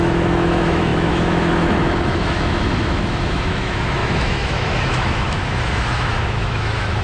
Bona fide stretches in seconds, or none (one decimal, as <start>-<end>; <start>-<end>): none